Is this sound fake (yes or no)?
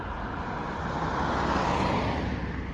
no